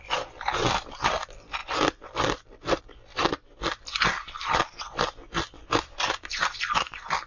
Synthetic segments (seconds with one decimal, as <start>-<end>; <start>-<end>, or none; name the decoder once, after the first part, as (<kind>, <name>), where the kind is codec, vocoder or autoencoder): 0.0-3.5 (vocoder, BigVGAN v2); 4.7-5.2; 5.8-7.3

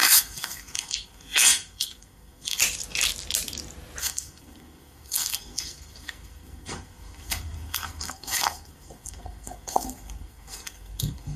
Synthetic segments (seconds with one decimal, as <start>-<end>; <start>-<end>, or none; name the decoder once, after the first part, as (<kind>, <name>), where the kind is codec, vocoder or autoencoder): 0.0-2.6 (codec, SNAC); 4.0-11.4

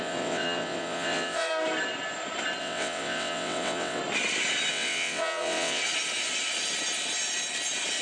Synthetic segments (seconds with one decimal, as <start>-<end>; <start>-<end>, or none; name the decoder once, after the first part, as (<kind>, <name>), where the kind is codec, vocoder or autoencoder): 0.0-1.5 (vocoder, WaveNeXt); 2.6-4.0; 4.7-5.8

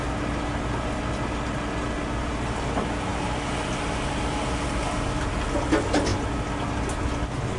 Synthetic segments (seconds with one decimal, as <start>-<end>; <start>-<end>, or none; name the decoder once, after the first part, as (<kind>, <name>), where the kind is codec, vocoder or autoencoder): none

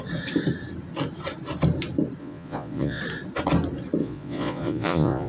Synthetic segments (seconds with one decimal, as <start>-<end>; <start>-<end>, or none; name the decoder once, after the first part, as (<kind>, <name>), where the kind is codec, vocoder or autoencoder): 2.2-3.0 (vocoder, Vocos); 4.0-5.3

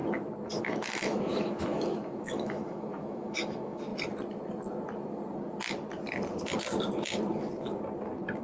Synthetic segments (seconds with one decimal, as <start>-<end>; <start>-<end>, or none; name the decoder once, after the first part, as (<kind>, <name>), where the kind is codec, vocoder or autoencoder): 0.6-3.9 (autoencoder, DAC-VAE)